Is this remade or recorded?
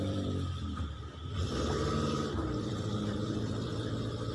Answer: remade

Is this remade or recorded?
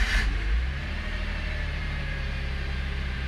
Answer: remade